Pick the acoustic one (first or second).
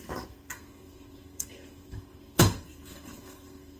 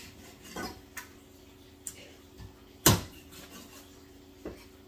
second